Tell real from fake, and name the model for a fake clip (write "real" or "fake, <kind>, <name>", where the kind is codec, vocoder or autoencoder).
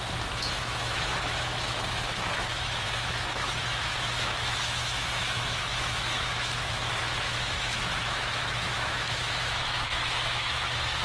fake, autoencoder, DAC-VAE